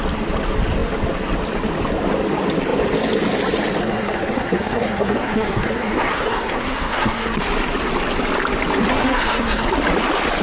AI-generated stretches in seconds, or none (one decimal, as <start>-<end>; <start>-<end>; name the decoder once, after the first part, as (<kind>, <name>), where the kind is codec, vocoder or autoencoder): 3.8-7.4 (codec, SNAC); 8.9-9.7